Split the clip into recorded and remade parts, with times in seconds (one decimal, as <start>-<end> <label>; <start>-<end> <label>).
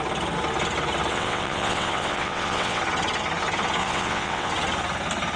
0.0-1.1 recorded; 1.1-2.8 remade; 2.8-3.8 recorded; 3.8-4.5 remade; 4.5-5.4 recorded